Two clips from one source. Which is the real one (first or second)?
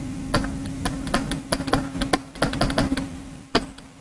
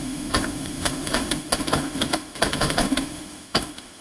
first